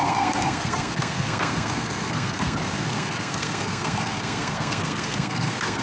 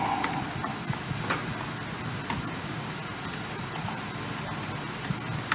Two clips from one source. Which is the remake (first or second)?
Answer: first